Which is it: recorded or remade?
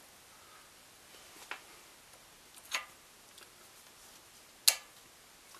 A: recorded